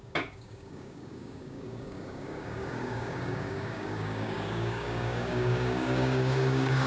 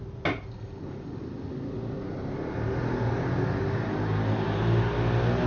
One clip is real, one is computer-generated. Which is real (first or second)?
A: second